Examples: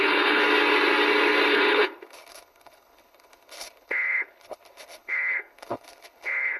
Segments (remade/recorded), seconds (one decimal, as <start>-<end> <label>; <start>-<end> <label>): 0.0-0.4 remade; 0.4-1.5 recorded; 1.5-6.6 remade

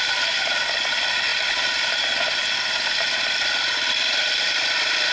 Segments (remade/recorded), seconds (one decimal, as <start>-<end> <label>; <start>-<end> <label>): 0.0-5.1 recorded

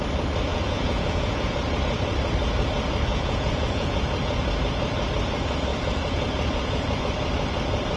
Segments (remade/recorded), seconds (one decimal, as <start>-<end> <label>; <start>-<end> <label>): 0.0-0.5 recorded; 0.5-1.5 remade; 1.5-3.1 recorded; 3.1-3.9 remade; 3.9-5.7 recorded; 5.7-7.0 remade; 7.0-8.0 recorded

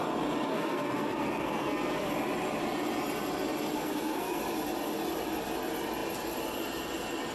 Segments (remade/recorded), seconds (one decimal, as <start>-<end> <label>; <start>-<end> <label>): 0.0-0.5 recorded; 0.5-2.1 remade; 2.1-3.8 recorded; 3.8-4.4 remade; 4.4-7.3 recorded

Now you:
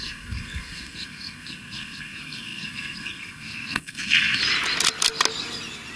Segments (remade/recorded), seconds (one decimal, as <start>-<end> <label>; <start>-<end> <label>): 0.0-4.4 remade; 4.4-6.0 recorded